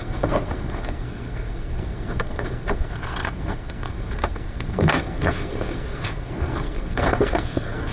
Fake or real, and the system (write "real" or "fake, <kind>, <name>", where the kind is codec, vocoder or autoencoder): fake, codec, SNAC